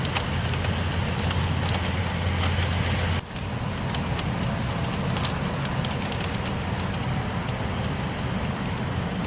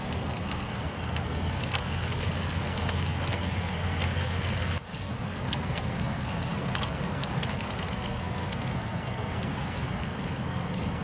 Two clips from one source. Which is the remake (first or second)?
second